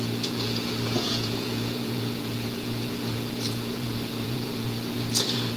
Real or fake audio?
fake